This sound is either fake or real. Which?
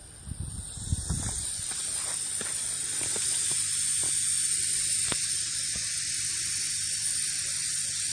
real